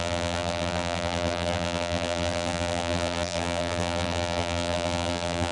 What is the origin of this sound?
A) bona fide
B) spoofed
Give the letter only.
B